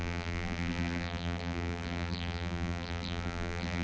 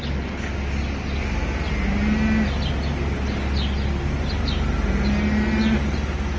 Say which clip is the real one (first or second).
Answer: second